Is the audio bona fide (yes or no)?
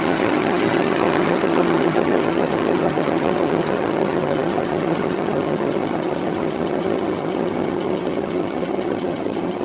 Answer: no